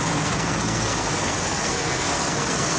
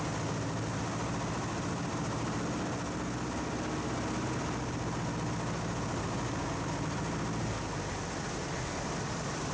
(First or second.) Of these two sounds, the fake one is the first